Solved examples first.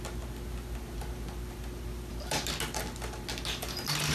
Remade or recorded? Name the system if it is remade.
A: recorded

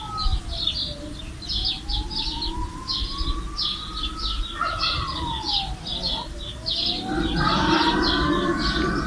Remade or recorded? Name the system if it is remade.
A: recorded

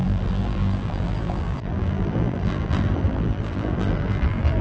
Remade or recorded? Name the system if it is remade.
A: remade, vocoder, BigVGAN v2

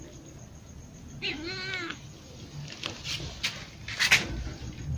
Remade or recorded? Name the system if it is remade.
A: recorded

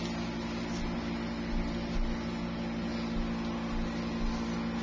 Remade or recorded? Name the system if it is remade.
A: recorded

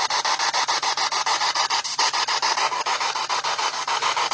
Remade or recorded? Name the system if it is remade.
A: recorded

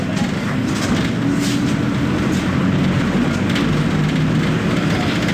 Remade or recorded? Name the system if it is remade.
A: recorded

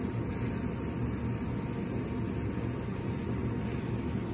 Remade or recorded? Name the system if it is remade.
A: recorded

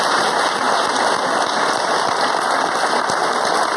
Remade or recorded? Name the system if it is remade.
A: recorded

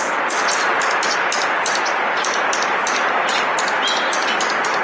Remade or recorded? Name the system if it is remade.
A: recorded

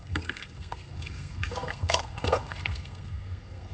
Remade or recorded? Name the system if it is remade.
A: remade, codec, SNAC